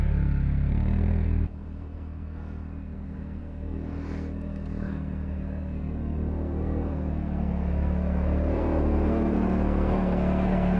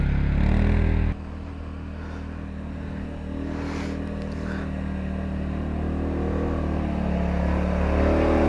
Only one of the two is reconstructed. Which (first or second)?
first